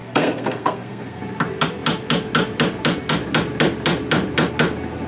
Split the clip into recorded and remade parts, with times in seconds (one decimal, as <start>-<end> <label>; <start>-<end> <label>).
0.0-1.2 remade; 1.2-5.1 recorded